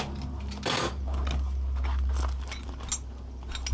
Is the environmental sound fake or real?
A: real